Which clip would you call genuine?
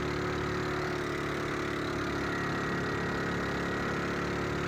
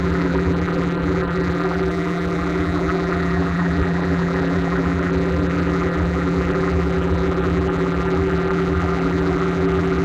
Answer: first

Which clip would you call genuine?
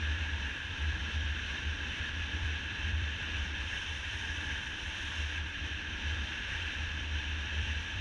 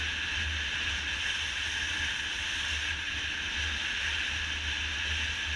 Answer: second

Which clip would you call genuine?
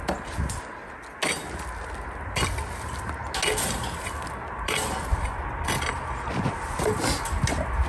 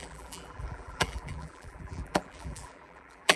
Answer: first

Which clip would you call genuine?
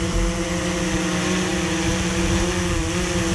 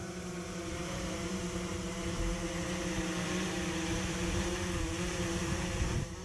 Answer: first